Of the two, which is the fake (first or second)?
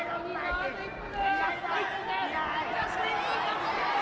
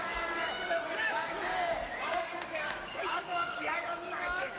second